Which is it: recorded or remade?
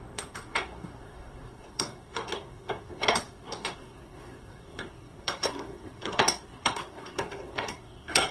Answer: remade